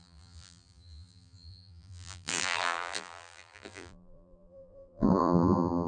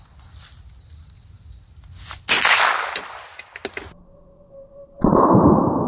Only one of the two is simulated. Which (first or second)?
first